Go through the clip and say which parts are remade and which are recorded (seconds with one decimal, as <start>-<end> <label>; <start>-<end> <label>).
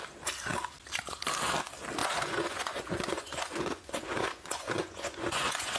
0.0-2.0 recorded; 2.0-5.8 remade